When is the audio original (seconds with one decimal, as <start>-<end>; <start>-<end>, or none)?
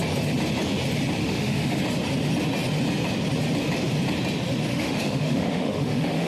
0.0-1.2; 1.8-4.7